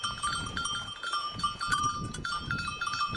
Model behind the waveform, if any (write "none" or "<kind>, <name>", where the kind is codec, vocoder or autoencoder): vocoder, Vocos